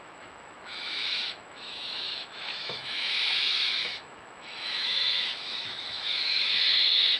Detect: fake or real fake